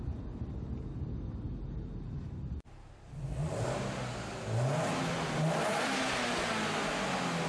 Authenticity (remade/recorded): recorded